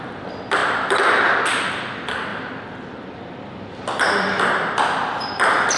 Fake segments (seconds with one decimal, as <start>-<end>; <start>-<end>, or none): 2.3-3.2